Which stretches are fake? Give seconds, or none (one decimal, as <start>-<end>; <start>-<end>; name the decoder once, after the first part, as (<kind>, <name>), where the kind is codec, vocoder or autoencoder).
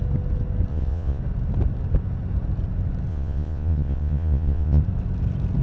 0.7-1.2 (vocoder, Vocos); 3.1-4.8